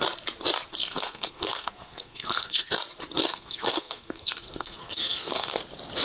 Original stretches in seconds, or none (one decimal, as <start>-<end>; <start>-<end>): 0.0-0.8; 2.7-3.2; 5.6-6.0